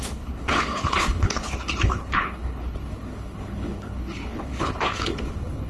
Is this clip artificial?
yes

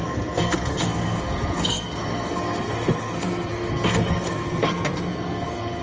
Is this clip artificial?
yes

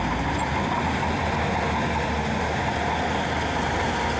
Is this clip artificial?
no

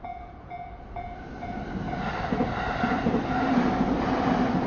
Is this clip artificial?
no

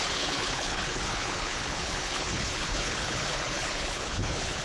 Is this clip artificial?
yes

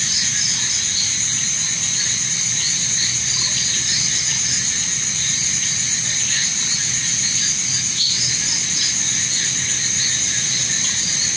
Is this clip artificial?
no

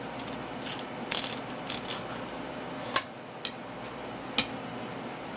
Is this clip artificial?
no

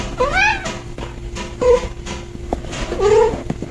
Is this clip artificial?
no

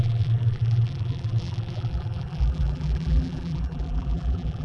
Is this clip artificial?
yes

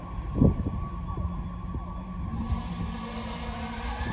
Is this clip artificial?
no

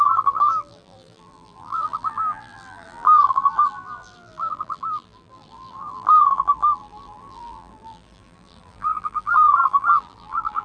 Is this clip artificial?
yes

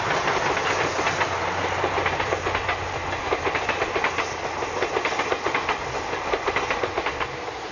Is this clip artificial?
no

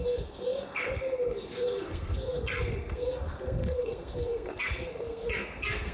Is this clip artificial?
yes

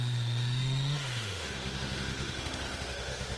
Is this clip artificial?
yes